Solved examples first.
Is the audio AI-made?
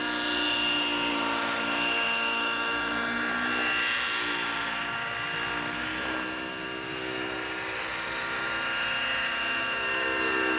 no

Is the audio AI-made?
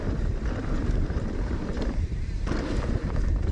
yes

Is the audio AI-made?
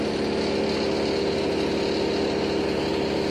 no